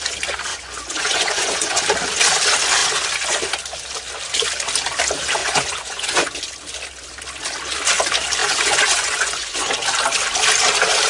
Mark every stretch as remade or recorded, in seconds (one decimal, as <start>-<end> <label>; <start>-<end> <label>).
0.0-0.5 recorded; 0.5-1.8 remade; 1.8-5.4 recorded; 5.4-6.4 remade; 6.4-8.4 recorded; 8.4-9.7 remade; 9.7-11.1 recorded